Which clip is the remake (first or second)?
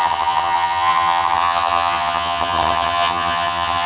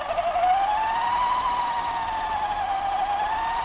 first